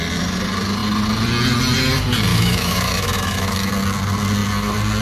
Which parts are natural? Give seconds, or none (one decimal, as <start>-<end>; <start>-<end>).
0.0-2.3; 3.7-5.0